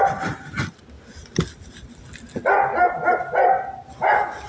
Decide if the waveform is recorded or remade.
recorded